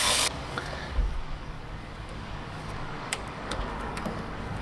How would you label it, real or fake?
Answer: fake